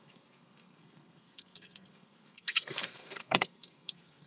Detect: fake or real fake